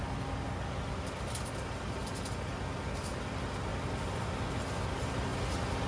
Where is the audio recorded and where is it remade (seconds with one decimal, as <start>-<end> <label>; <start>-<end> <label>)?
0.0-5.9 recorded